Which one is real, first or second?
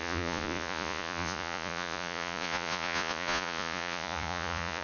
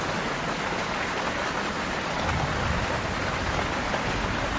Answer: second